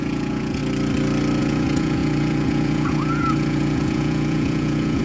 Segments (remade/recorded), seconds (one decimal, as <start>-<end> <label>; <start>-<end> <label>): 0.0-0.6 remade; 0.6-1.4 recorded; 1.4-5.0 remade